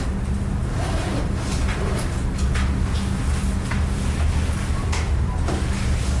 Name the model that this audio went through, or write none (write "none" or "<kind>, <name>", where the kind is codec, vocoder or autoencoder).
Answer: none